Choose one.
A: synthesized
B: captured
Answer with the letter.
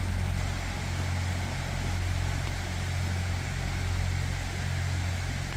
B